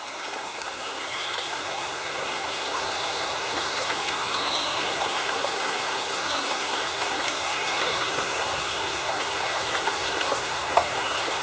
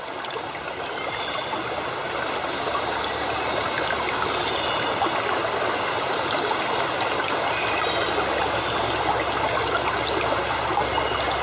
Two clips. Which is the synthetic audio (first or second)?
first